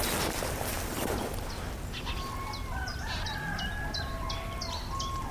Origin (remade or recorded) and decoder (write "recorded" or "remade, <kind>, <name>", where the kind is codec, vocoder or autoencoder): recorded